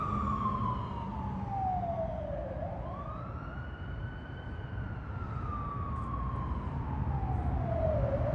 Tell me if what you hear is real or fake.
real